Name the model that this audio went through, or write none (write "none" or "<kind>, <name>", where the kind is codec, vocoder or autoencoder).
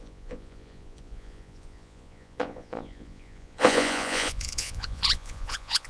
vocoder, Vocos